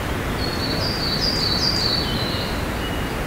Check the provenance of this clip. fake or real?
real